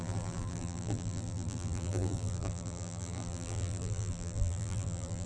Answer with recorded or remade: remade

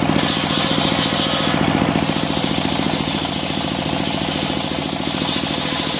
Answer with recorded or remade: recorded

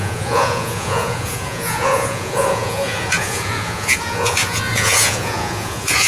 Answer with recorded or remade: remade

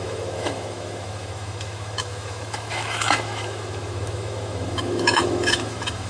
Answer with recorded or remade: remade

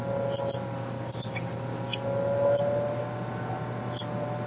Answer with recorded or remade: recorded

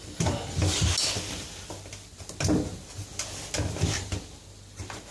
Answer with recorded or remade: recorded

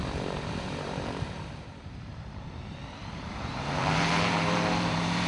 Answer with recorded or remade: remade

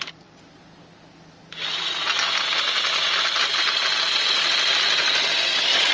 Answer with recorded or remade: recorded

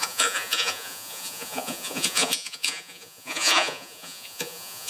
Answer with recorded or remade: remade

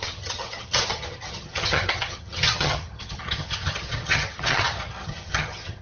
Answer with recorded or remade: remade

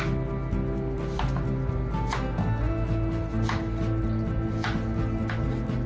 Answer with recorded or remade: recorded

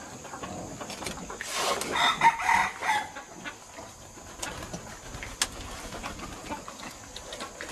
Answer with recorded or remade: recorded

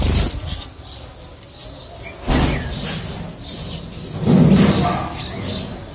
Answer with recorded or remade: recorded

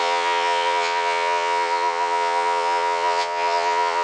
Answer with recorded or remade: remade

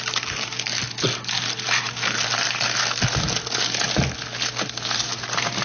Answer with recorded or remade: recorded